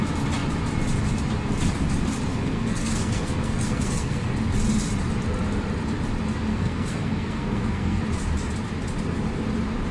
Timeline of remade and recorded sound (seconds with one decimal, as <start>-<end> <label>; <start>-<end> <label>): 0.0-2.3 recorded; 2.3-4.3 remade; 4.3-6.5 recorded; 6.5-8.0 remade; 8.0-9.9 recorded